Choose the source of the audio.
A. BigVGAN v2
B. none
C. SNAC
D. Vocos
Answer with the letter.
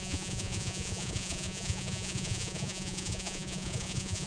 D